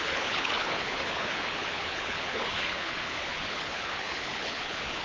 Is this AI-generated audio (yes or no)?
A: yes